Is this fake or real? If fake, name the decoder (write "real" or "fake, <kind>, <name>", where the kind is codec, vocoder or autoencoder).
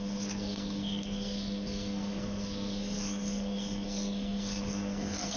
fake, codec, SNAC